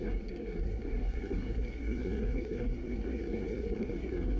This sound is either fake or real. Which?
fake